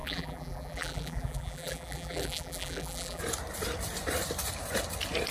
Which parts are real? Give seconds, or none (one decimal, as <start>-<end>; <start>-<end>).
3.2-5.3